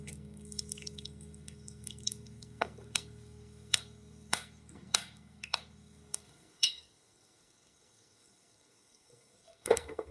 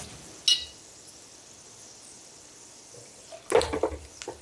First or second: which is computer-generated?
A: first